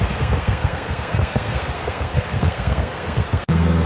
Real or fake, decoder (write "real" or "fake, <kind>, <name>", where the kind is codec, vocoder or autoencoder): fake, codec, SNAC